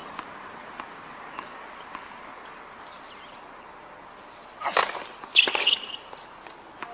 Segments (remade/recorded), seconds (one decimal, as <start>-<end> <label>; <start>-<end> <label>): 0.0-6.9 recorded

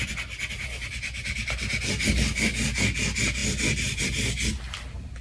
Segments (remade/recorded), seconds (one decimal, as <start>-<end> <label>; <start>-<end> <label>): 0.0-5.2 recorded

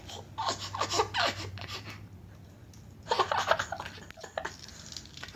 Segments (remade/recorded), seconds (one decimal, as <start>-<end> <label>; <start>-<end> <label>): 0.0-5.4 recorded

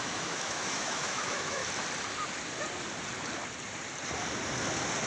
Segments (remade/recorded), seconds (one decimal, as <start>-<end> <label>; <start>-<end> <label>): 0.0-1.6 remade; 1.6-5.1 recorded

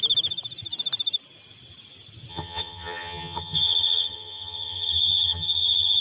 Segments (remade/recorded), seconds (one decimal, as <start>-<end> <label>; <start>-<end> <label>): 0.0-2.3 recorded; 2.3-6.0 remade

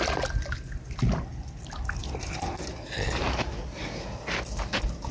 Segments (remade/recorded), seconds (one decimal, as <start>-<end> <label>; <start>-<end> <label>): 0.0-5.1 recorded

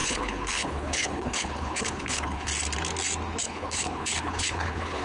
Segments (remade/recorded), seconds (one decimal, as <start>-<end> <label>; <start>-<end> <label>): 0.0-2.5 remade; 2.5-3.4 recorded; 3.4-5.0 remade

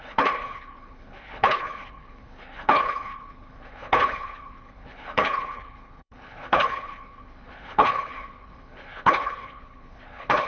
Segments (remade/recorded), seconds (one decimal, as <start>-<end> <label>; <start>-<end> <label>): 0.0-10.5 remade